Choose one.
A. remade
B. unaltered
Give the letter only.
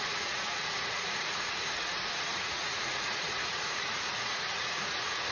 A